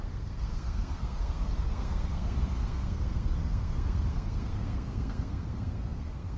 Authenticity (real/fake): fake